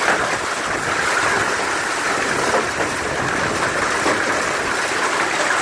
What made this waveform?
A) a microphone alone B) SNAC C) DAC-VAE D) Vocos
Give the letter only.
A